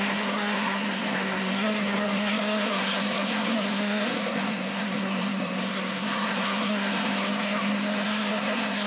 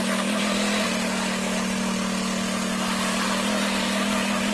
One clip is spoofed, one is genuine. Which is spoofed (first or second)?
first